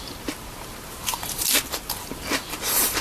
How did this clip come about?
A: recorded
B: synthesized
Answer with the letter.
A